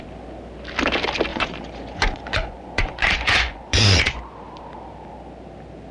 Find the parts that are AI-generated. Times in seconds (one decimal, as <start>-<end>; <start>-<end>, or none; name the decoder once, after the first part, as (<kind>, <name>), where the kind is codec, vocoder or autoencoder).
1.3-4.2 (vocoder, Vocos)